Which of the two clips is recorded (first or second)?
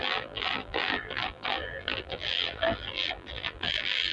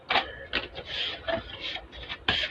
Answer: second